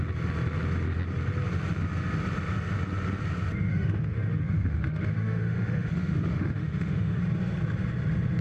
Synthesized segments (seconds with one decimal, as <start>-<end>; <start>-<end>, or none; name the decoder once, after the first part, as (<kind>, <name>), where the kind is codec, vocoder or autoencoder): 3.7-7.2 (autoencoder, DAC-VAE)